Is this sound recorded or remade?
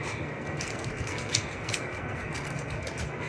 remade